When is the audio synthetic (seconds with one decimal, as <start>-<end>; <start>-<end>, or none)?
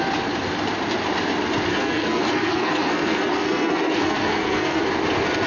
1.7-4.8